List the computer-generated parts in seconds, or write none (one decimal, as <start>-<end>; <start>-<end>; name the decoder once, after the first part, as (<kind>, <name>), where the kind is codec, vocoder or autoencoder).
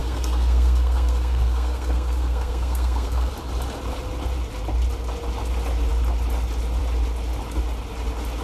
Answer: 0.0-3.3 (codec, SNAC)